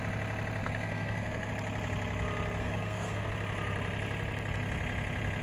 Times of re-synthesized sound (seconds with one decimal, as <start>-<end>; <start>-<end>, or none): 0.6-1.5; 2.6-3.3